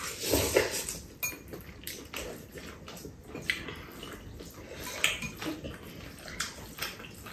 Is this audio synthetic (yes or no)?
no